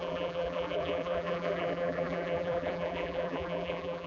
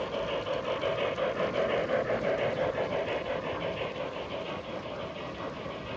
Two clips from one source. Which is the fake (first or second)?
first